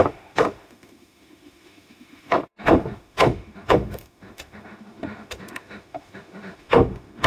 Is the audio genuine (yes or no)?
no